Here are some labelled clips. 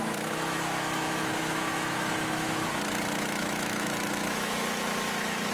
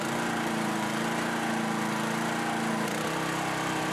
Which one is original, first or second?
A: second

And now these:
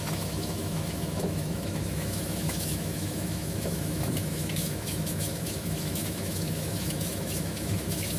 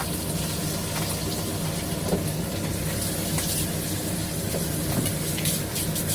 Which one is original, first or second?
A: second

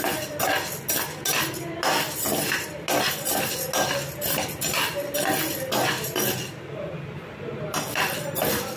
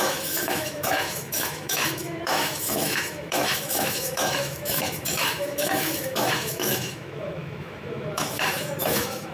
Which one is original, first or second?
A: first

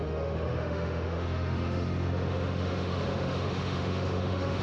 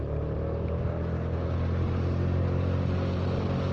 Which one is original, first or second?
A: second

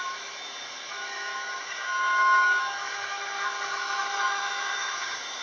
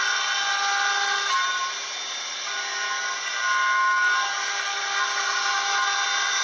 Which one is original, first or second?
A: second